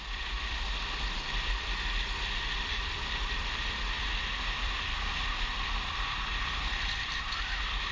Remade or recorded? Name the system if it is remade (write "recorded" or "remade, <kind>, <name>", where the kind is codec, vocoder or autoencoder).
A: remade, vocoder, BigVGAN v2